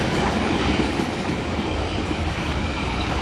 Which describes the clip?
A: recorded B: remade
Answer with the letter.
B